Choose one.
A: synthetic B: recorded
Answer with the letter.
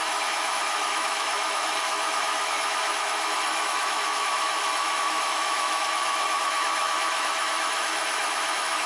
A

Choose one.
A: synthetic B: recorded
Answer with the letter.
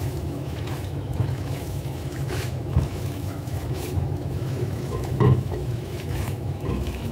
A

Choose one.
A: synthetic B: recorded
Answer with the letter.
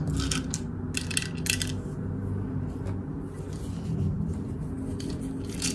B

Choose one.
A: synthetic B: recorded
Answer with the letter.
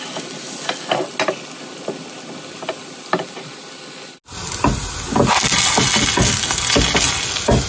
B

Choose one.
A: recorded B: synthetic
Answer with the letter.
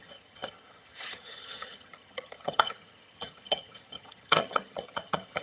B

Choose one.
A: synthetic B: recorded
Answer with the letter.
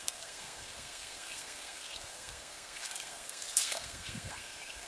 A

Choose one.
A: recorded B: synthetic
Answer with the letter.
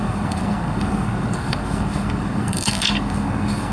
B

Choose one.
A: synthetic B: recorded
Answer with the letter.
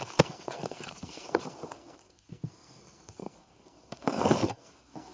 A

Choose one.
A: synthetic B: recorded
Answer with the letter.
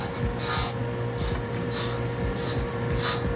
B